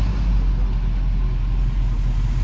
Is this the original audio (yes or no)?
yes